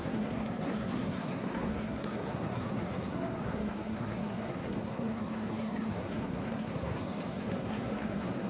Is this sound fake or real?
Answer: fake